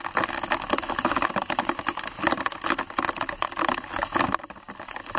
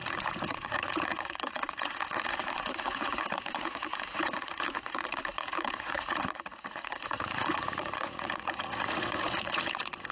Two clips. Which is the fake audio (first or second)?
second